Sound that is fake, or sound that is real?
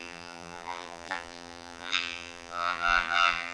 fake